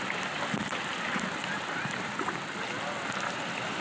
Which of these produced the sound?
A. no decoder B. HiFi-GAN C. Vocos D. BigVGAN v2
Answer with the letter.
A